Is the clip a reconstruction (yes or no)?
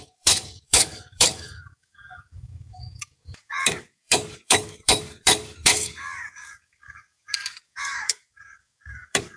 yes